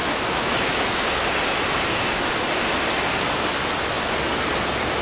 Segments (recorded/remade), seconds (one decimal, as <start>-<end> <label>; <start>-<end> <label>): 0.0-1.1 remade; 1.1-5.0 recorded